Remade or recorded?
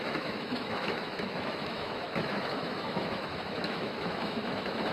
remade